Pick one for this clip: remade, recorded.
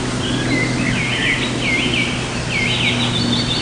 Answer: recorded